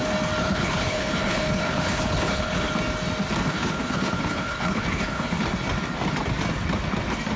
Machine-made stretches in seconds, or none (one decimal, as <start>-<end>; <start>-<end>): 0.4-2.7; 3.4-5.4